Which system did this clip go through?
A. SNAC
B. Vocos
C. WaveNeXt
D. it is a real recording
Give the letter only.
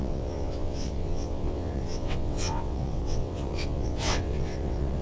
C